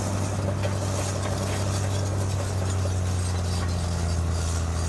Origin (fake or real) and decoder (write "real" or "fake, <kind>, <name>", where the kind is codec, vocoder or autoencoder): real